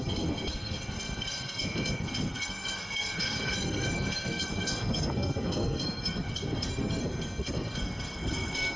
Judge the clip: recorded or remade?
remade